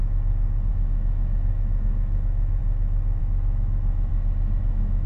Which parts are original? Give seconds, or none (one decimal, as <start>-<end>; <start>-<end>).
0.0-0.7; 2.6-3.2; 4.1-4.6